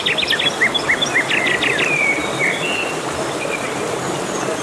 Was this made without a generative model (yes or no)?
yes